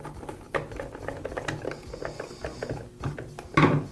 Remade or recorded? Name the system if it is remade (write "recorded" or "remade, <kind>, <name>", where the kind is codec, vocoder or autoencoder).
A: recorded